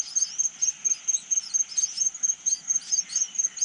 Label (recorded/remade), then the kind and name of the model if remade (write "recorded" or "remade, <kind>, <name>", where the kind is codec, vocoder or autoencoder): recorded